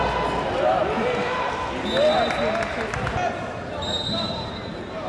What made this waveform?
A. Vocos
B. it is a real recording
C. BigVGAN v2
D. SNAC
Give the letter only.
B